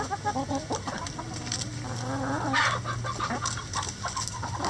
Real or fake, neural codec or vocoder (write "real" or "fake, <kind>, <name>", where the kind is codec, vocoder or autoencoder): real